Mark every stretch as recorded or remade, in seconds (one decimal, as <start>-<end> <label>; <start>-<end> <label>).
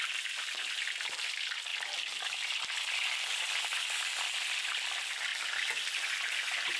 0.0-6.8 recorded